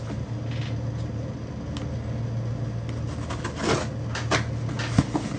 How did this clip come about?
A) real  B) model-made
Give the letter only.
A